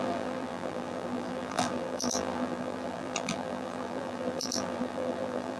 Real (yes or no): no